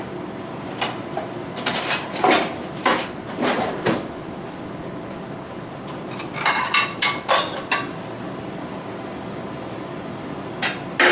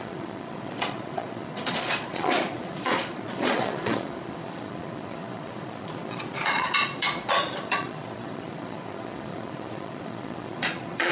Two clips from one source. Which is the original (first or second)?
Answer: first